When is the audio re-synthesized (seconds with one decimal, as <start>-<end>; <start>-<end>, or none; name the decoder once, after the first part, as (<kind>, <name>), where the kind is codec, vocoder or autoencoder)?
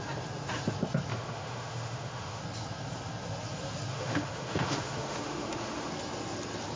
1.1-2.4 (autoencoder, DAC-VAE); 3.9-5.9